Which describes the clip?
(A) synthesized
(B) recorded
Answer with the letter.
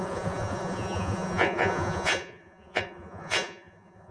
A